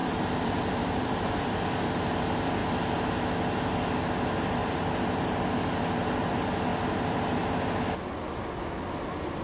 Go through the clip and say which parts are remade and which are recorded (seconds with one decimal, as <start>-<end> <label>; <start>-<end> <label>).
0.0-1.6 remade; 1.6-4.6 recorded; 4.6-6.3 remade; 6.3-6.7 recorded; 6.7-7.5 remade; 7.5-9.4 recorded